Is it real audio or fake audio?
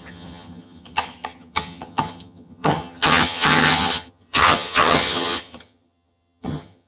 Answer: fake